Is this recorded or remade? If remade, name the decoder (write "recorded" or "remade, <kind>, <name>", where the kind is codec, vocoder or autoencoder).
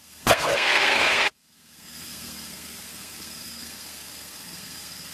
remade, codec, SNAC